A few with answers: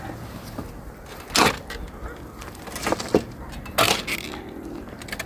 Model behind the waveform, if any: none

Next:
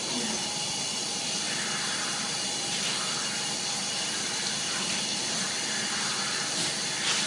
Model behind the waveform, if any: none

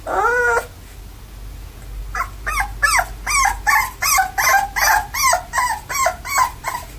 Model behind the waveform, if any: none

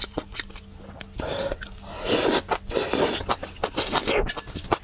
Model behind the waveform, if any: none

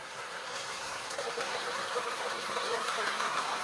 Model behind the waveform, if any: codec, SNAC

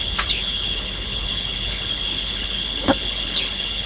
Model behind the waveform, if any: codec, HILCodec